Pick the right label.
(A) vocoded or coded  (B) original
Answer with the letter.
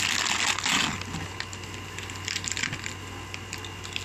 B